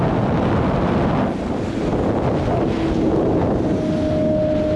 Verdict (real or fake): real